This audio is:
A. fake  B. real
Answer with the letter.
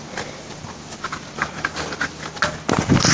B